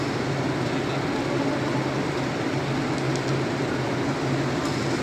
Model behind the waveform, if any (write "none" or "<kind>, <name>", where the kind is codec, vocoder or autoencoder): none